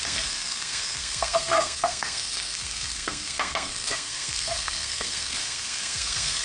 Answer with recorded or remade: remade